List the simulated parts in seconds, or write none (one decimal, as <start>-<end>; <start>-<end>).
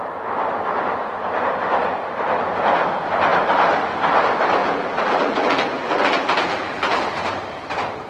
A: 4.6-7.0